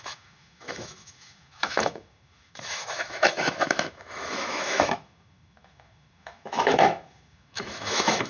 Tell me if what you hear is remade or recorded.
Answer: remade